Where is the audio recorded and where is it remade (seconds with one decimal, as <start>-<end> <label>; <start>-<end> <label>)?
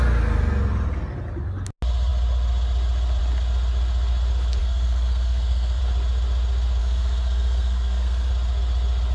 0.0-4.6 recorded; 4.6-5.8 remade; 5.8-6.8 recorded; 6.8-8.3 remade; 8.3-9.1 recorded